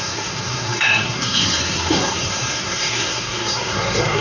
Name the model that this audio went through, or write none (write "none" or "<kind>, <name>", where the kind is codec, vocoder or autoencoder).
codec, SNAC